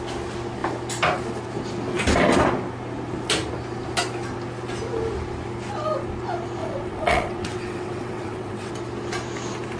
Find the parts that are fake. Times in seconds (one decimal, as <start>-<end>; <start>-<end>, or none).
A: 6.6-8.7